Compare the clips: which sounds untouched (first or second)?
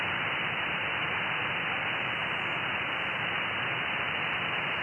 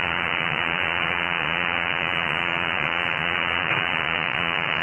first